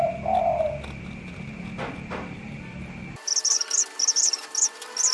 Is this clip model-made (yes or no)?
no